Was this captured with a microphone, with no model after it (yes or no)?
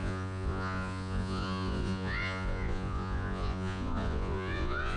no